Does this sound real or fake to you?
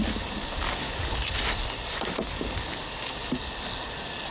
real